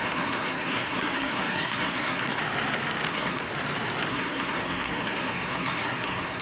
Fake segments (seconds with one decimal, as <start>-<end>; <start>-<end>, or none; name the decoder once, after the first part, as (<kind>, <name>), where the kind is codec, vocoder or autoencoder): 0.0-2.4 (codec, SNAC); 3.1-3.5; 4.1-6.4